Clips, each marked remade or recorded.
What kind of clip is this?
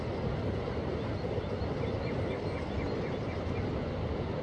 recorded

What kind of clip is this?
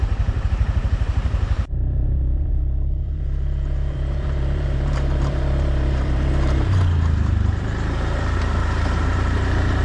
remade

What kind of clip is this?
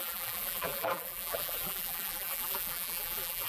remade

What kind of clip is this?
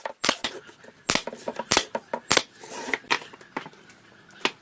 recorded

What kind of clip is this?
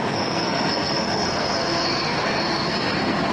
remade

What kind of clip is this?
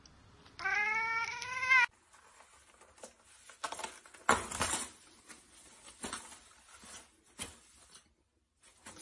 recorded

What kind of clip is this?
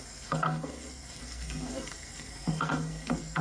remade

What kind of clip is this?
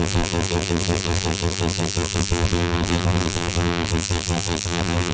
remade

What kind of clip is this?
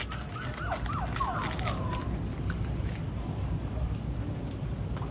recorded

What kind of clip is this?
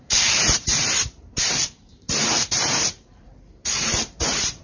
remade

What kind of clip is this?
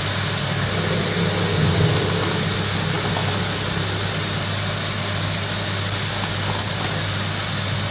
recorded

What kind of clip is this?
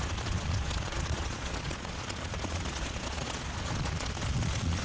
remade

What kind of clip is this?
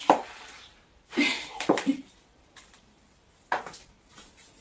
remade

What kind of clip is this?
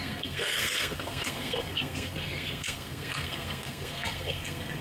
remade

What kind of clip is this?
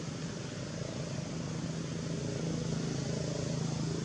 recorded